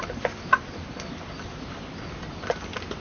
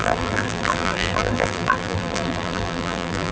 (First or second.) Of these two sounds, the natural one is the first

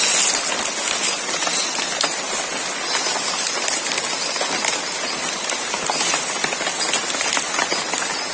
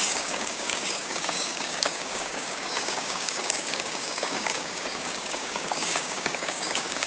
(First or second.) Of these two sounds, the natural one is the first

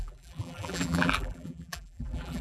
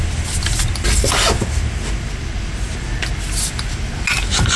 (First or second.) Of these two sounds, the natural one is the second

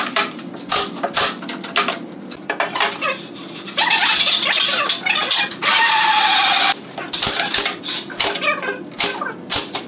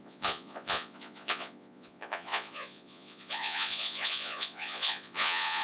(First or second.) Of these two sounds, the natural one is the first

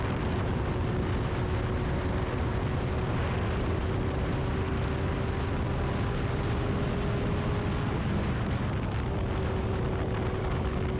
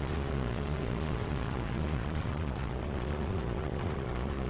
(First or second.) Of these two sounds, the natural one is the first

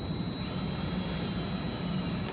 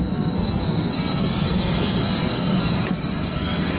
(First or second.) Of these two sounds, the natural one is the first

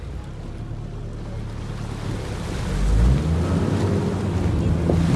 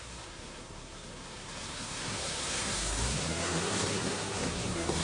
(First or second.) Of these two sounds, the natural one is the first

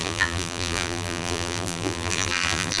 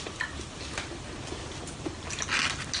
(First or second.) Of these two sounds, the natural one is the second